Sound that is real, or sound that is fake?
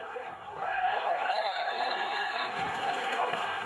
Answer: fake